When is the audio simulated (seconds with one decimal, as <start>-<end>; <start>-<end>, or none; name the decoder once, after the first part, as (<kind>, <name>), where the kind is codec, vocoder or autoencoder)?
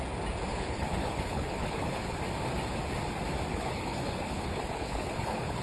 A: 0.5-2.2 (codec, HILCodec); 3.5-5.6